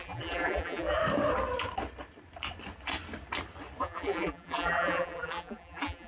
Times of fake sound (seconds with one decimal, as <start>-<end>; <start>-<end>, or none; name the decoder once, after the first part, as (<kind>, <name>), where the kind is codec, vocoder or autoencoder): 0.0-1.0 (vocoder, BigVGAN v2); 3.8-6.1